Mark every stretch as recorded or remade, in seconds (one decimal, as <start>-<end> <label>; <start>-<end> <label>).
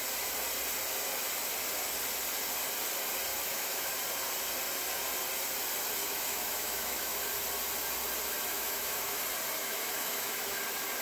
0.0-3.3 recorded; 3.3-3.9 remade; 3.9-6.0 recorded; 6.0-7.2 remade; 7.2-8.5 recorded; 8.5-9.2 remade; 9.2-9.6 recorded; 9.6-10.6 remade; 10.6-11.0 recorded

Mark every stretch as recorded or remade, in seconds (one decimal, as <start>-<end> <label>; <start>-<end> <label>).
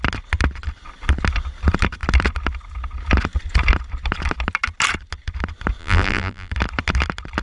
0.0-5.8 recorded; 5.8-6.5 remade; 6.5-7.4 recorded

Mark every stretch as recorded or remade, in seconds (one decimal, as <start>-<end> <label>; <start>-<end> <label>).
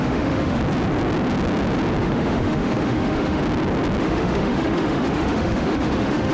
0.0-0.6 remade; 0.6-2.0 recorded; 2.0-3.4 remade; 3.4-4.0 recorded; 4.0-6.3 remade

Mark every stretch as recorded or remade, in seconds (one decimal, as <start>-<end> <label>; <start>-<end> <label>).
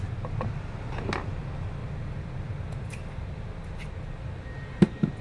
0.0-5.2 recorded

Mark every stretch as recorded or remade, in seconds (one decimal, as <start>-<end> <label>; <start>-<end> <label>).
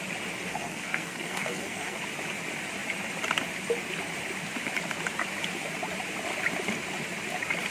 0.0-0.5 recorded; 0.5-2.0 remade; 2.0-7.7 recorded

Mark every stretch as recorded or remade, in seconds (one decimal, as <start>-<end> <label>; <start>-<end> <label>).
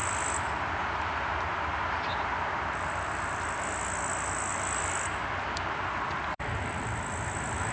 0.0-3.6 remade; 3.6-4.5 recorded; 4.5-7.1 remade; 7.1-7.7 recorded